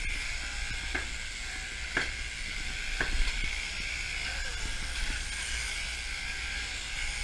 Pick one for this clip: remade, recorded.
recorded